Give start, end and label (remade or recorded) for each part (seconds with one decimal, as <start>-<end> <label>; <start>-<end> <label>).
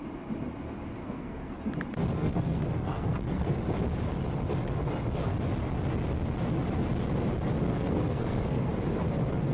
0.0-1.0 recorded; 1.0-1.6 remade; 1.6-2.1 recorded; 2.1-3.6 remade; 3.6-7.7 recorded; 7.7-8.7 remade; 8.7-9.5 recorded